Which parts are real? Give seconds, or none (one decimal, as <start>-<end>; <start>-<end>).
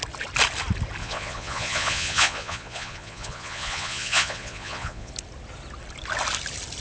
0.0-1.0; 5.1-6.8